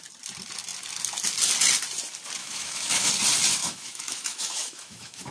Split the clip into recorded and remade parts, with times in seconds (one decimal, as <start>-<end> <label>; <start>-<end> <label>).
0.0-2.4 recorded; 2.4-3.1 remade; 3.1-3.6 recorded; 3.6-5.3 remade